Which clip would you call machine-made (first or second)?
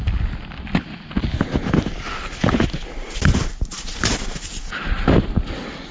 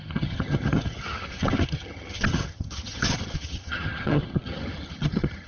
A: second